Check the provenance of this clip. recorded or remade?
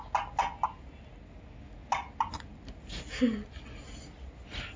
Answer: recorded